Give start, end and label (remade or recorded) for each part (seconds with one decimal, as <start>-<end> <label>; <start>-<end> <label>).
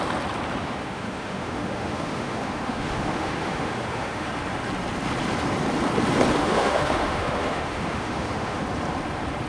0.0-0.6 recorded; 0.6-4.3 remade; 4.3-6.4 recorded; 6.4-8.6 remade; 8.6-9.5 recorded